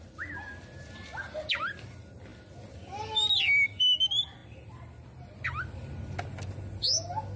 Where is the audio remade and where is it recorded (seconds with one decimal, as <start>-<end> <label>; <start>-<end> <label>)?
0.0-7.4 recorded